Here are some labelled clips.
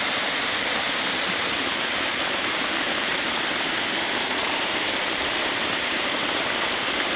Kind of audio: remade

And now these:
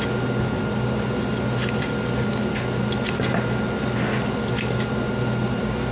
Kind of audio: recorded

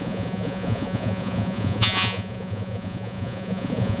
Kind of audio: remade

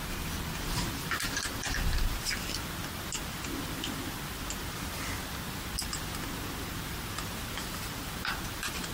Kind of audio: recorded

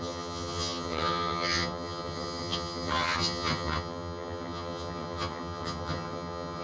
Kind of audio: remade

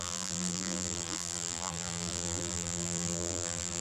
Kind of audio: remade